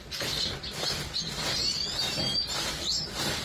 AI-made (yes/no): no